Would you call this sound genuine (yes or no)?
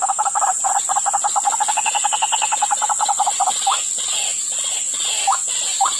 yes